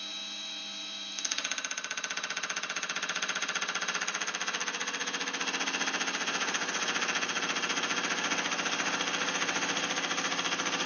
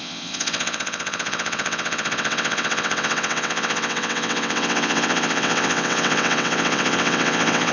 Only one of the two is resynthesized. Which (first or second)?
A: second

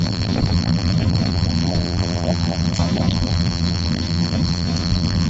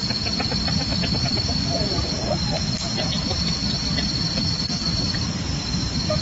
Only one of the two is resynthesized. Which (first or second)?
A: first